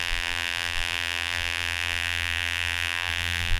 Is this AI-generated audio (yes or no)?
yes